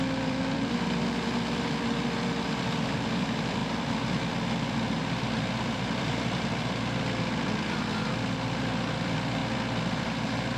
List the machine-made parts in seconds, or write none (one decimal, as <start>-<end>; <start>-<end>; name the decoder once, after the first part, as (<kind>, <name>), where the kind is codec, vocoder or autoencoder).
0.0-9.4 (vocoder, BigVGAN v2); 10.0-10.6